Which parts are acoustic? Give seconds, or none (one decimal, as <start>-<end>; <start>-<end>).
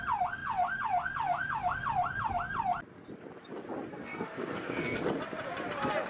0.0-3.9; 5.0-6.1